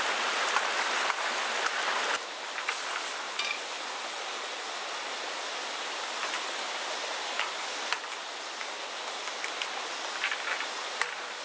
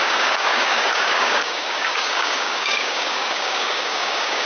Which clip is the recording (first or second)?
first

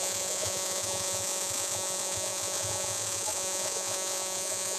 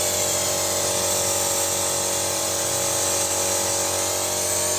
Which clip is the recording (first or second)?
second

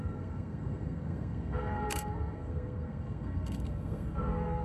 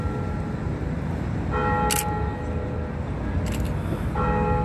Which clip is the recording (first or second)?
second